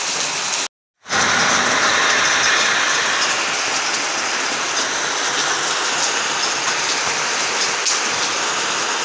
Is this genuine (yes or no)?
yes